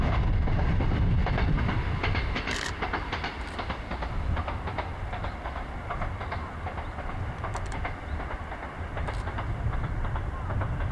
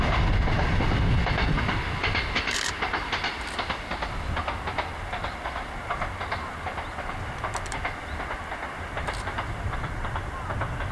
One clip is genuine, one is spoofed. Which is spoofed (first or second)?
first